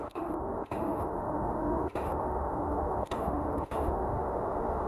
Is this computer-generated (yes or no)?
yes